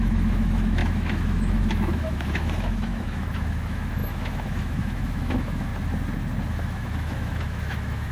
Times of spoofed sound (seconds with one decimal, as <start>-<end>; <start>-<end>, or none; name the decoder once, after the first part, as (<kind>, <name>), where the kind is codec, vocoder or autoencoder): 0.0-5.7 (autoencoder, DAC-VAE); 6.5-8.1